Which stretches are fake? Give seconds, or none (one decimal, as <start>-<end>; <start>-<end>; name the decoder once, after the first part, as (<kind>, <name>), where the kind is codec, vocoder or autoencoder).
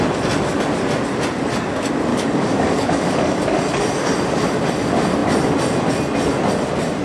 2.1-3.6 (codec, DAC)